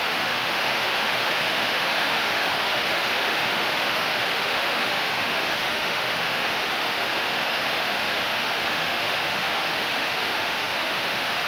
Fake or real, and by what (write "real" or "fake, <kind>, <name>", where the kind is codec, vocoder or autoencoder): fake, autoencoder, DAC-VAE